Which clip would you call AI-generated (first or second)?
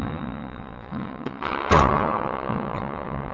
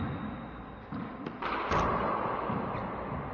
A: first